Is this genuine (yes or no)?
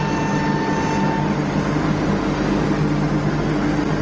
yes